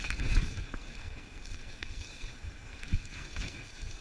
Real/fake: fake